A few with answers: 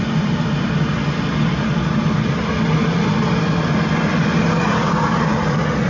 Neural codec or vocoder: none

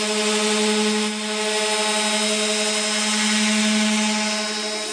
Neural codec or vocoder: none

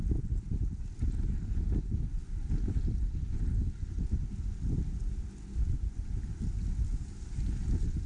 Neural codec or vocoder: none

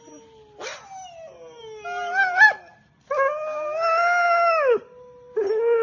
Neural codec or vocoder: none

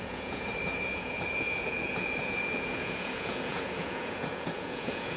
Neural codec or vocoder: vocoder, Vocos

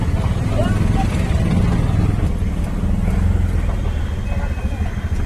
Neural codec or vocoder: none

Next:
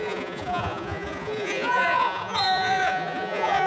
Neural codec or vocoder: vocoder, Vocos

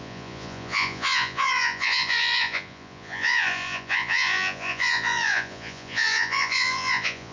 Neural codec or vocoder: vocoder, Vocos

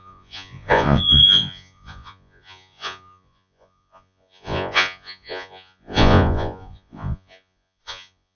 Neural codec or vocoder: vocoder, Vocos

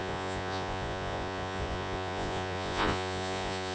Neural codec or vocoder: vocoder, Vocos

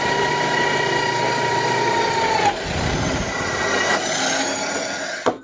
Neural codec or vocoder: none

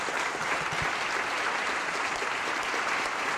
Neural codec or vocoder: none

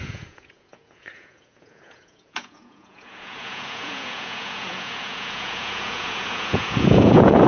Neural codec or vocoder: vocoder, Vocos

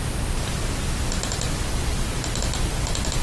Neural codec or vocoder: none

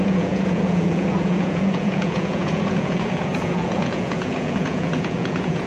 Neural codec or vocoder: vocoder, Vocos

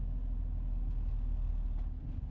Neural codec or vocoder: none